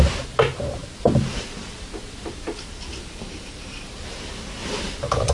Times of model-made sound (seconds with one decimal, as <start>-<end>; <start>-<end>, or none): 0.8-3.9; 4.6-5.3